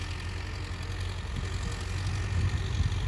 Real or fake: real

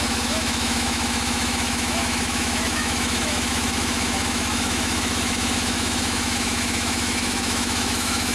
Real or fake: fake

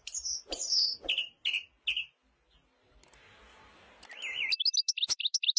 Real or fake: real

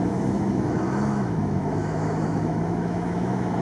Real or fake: fake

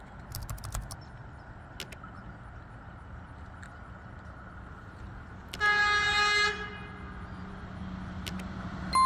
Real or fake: real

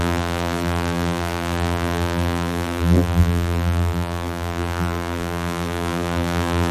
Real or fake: fake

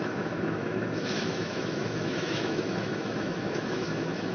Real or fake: fake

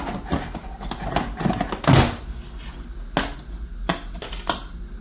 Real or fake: real